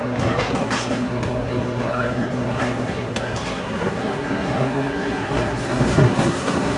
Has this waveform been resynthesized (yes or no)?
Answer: yes